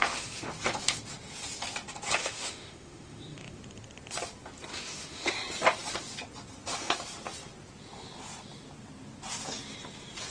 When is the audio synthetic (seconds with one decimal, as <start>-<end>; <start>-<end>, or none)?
0.0-0.5; 2.2-3.6; 4.7-5.3